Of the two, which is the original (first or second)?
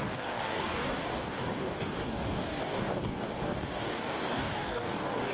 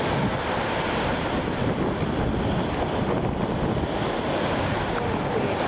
second